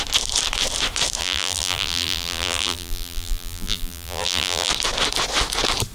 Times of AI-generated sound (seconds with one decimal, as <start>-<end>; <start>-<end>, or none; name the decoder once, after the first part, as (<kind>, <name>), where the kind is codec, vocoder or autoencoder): 1.2-4.7 (vocoder, BigVGAN v2)